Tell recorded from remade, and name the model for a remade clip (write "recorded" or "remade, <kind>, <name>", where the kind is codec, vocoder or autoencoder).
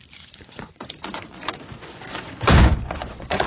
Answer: remade, vocoder, Vocos